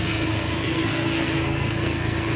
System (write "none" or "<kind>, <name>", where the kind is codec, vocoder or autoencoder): codec, SNAC